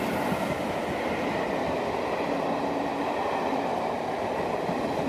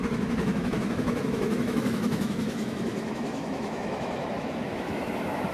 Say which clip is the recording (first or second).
first